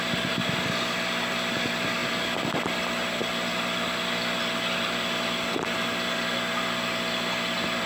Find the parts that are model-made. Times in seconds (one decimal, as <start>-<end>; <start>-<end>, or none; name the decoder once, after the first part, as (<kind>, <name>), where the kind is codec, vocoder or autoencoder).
2.0-4.4 (vocoder, BigVGAN v2)